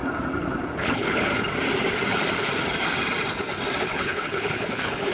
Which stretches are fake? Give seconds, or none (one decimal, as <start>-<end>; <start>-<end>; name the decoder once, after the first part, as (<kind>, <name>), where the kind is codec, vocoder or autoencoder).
0.8-1.3 (codec, HILCodec); 3.8-5.1